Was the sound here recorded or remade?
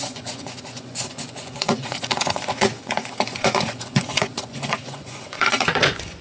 remade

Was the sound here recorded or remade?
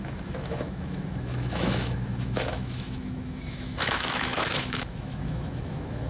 remade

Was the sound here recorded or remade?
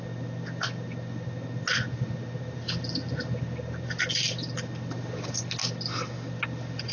recorded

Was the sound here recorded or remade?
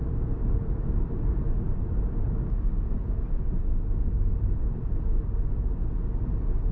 recorded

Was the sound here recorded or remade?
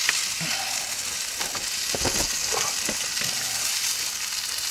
recorded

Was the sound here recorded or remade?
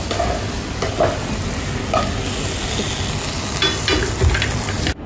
recorded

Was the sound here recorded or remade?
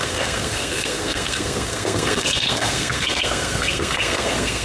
remade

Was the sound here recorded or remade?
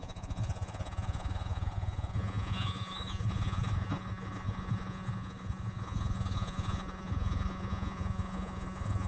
remade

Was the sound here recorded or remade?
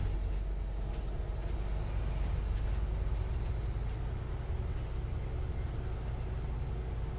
recorded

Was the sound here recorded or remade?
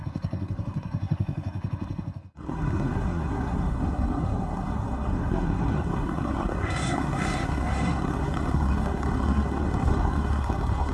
remade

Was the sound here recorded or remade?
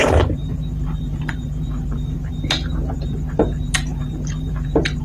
remade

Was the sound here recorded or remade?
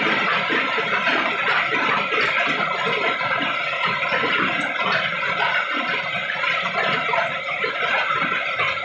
recorded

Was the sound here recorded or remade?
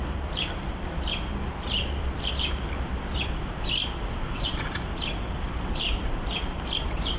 remade